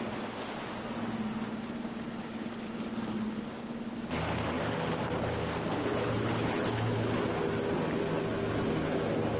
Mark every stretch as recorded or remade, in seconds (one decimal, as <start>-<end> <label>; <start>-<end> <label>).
0.0-5.7 recorded; 5.7-7.2 remade; 7.2-9.4 recorded